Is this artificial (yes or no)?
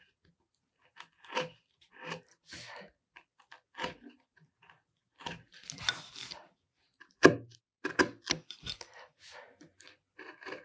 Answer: no